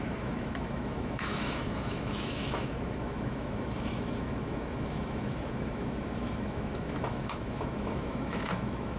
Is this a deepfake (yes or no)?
yes